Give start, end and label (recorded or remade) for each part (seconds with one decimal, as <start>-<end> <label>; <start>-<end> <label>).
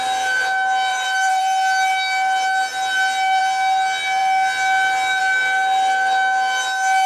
0.0-0.9 recorded; 0.9-1.4 remade; 1.4-7.1 recorded